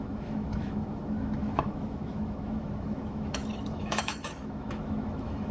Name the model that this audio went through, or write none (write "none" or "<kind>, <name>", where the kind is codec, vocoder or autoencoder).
autoencoder, DAC-VAE